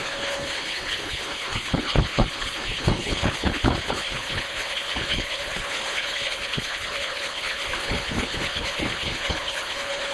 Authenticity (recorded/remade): remade